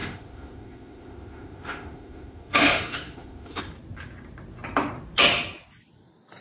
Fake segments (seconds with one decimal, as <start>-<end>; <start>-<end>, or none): 0.0-3.6